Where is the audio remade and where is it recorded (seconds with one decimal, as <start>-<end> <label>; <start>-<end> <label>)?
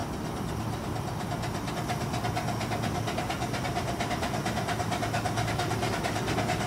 0.0-6.7 recorded